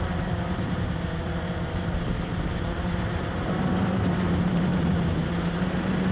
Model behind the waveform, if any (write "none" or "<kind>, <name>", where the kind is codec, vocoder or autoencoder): vocoder, BigVGAN v2